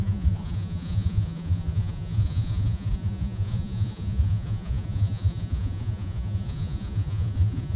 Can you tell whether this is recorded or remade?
remade